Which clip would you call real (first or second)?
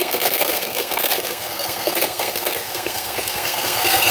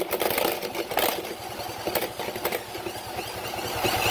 second